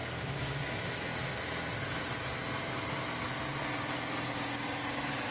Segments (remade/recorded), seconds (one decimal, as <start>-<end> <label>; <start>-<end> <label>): 0.0-5.3 recorded